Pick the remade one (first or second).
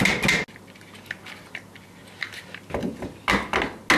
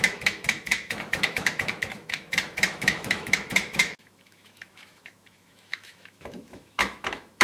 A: second